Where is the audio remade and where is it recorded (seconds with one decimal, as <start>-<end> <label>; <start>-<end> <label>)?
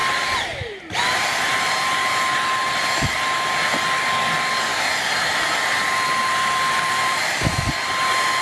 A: 0.0-1.7 remade; 1.7-4.7 recorded; 4.7-7.5 remade; 7.5-8.4 recorded